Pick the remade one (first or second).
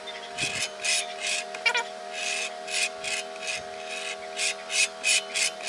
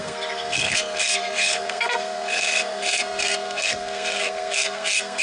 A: second